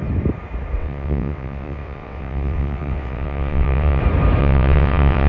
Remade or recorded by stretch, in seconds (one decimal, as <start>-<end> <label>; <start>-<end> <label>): 0.0-0.8 recorded; 0.8-4.0 remade; 4.0-4.4 recorded; 4.4-5.3 remade